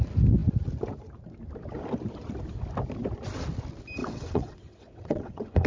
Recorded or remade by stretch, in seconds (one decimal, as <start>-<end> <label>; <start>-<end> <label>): 0.0-4.0 recorded; 4.0-5.7 remade